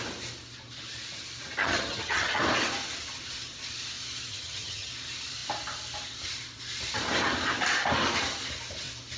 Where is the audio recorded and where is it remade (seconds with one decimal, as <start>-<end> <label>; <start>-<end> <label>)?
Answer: 0.0-1.6 recorded; 1.6-2.4 remade; 2.4-4.3 recorded; 4.3-4.9 remade; 4.9-9.2 recorded